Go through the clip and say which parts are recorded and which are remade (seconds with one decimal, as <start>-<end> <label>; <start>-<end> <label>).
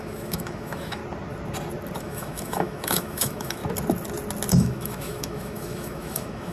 0.0-1.0 remade; 1.0-2.0 recorded; 2.0-3.6 remade; 3.6-4.5 recorded; 4.5-6.5 remade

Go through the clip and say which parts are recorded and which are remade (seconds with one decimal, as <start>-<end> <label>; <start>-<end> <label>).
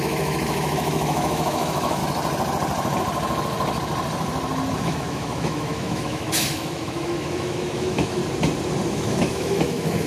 0.0-2.0 remade; 2.0-4.8 recorded; 4.8-8.2 remade; 8.2-8.9 recorded; 8.9-10.1 remade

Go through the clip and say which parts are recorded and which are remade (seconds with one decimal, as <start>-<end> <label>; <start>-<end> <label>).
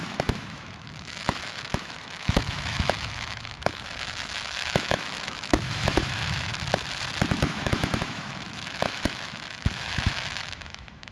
0.0-6.5 remade; 6.5-7.3 recorded; 7.3-11.1 remade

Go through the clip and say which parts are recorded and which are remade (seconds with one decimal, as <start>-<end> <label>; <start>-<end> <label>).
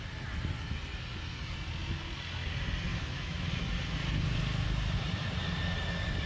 0.0-2.9 recorded; 2.9-3.5 remade; 3.5-6.3 recorded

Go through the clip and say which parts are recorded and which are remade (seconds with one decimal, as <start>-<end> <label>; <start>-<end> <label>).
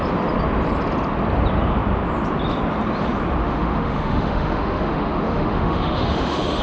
0.0-3.4 recorded; 3.4-6.6 remade